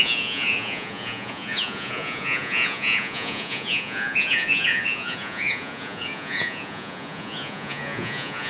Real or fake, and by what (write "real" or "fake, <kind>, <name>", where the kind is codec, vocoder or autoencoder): fake, vocoder, Vocos